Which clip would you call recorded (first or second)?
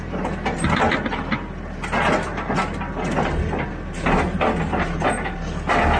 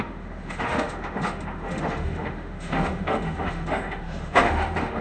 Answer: first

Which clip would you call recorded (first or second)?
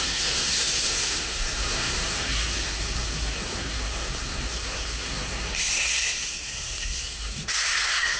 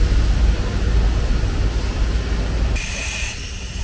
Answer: second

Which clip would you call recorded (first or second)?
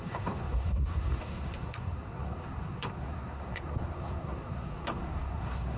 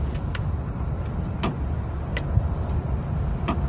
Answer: second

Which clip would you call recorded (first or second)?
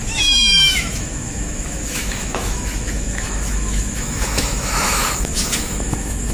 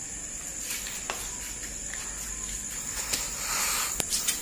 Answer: second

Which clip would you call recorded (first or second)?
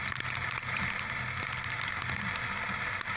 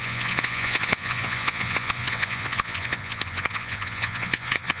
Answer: first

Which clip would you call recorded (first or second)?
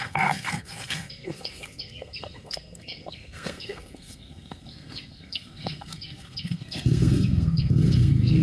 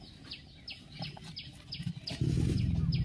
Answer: second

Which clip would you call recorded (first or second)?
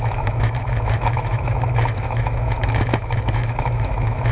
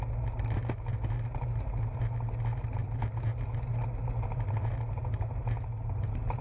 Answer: second